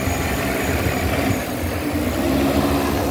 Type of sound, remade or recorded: recorded